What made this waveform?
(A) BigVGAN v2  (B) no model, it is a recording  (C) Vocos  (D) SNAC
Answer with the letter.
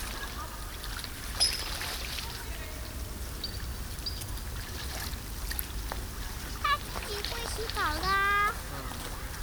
B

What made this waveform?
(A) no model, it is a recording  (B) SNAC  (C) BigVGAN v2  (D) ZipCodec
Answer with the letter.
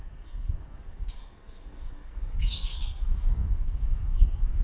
B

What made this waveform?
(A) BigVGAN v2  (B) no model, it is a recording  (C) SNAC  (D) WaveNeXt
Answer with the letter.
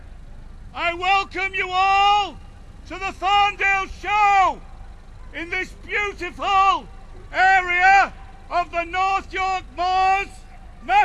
B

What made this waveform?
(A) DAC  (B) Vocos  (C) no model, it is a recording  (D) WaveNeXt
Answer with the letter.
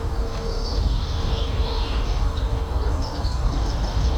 A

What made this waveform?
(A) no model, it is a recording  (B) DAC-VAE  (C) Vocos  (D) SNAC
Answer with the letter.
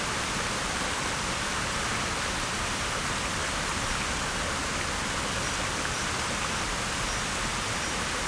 A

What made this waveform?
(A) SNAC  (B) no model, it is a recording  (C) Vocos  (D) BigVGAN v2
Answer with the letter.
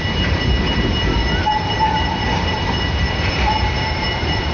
D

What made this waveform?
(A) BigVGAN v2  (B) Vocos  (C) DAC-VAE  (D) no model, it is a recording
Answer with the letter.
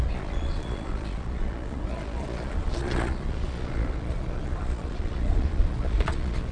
B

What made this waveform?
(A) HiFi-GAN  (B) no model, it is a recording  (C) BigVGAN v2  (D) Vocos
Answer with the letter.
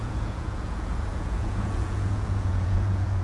D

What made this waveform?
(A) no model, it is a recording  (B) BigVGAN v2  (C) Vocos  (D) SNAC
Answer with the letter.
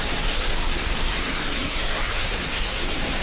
D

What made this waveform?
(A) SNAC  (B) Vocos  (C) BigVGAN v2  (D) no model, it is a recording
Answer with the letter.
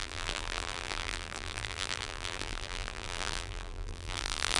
C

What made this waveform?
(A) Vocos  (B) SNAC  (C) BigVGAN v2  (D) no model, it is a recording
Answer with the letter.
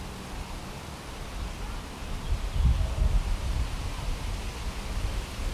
D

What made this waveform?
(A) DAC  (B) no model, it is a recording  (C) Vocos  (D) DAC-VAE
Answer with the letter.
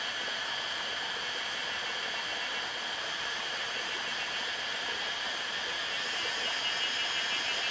B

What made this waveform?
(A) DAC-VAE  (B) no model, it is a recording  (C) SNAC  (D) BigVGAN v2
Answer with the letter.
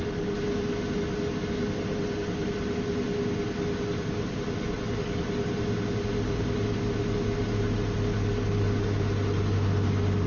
B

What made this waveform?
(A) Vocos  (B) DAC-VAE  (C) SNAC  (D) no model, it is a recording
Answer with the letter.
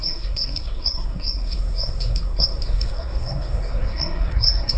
C